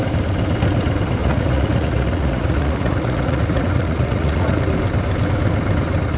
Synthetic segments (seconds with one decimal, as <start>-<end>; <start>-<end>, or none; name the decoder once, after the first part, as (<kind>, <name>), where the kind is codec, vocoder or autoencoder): 1.2-4.6 (vocoder, Vocos)